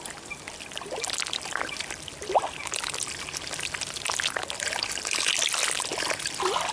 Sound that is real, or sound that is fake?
real